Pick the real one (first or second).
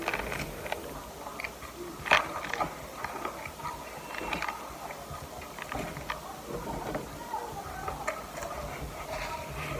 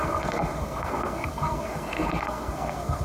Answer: first